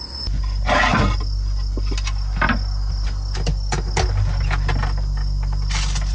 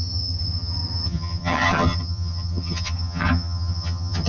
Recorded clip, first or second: first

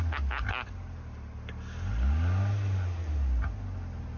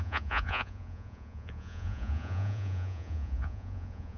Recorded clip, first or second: first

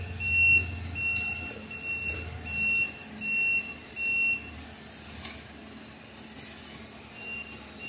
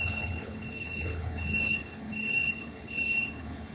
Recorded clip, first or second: first